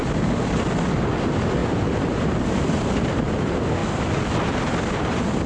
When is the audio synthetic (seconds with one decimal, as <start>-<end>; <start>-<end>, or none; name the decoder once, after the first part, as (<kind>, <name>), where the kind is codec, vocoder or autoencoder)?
1.6-3.2 (vocoder, BigVGAN v2)